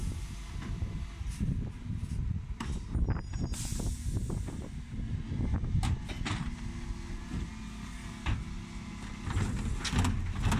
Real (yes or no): yes